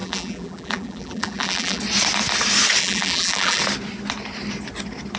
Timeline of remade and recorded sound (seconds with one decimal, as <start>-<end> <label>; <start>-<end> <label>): 0.0-1.8 remade; 1.8-2.8 recorded; 2.8-3.6 remade; 3.6-5.2 recorded